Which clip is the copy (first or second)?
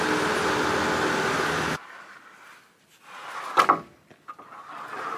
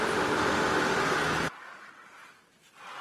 second